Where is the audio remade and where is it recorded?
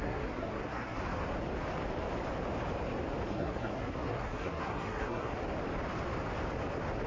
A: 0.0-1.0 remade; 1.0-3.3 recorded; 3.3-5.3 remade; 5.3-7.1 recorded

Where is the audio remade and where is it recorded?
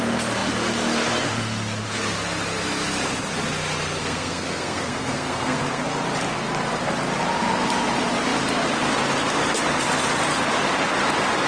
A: 0.0-4.0 recorded; 4.0-5.8 remade; 5.8-11.5 recorded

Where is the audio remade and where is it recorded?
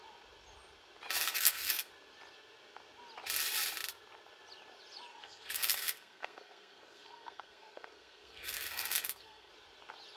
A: 0.0-1.2 recorded; 1.2-1.9 remade; 1.9-5.1 recorded; 5.1-9.5 remade; 9.5-10.2 recorded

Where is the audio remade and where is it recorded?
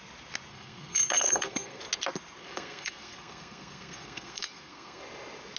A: 0.0-0.5 recorded; 0.5-1.8 remade; 1.8-2.4 recorded; 2.4-5.0 remade; 5.0-5.6 recorded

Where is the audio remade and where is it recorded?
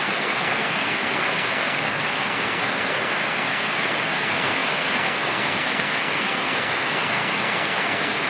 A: 0.0-8.3 remade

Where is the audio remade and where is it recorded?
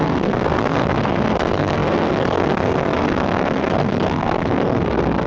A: 0.0-5.3 remade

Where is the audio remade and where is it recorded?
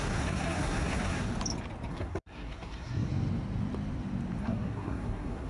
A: 0.0-1.3 remade; 1.3-1.9 recorded; 1.9-3.1 remade; 3.1-4.4 recorded; 4.4-5.5 remade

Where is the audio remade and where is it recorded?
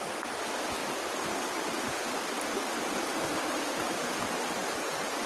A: 0.0-5.3 recorded